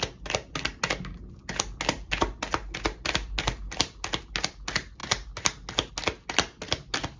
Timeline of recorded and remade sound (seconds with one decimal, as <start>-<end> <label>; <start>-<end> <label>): 0.0-7.2 recorded